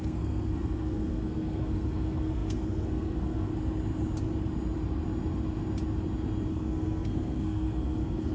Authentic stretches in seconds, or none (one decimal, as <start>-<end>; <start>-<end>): 3.5-6.5